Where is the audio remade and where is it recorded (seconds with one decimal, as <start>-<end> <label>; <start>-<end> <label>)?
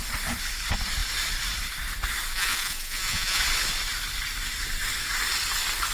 0.0-2.3 recorded; 2.3-3.4 remade; 3.4-5.9 recorded